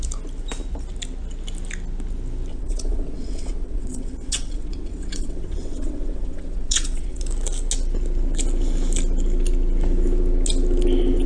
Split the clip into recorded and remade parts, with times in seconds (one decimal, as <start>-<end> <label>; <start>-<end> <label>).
0.0-2.5 recorded; 2.5-7.2 remade; 7.2-11.3 recorded